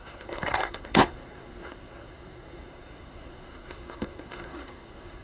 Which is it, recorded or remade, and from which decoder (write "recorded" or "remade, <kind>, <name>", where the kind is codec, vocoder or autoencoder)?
remade, codec, SNAC